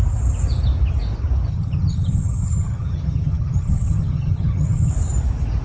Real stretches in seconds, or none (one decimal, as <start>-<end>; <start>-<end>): 0.0-1.5; 4.9-5.6